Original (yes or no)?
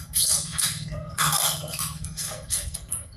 no